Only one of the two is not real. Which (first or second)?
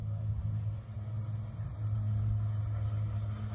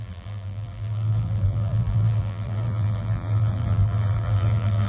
second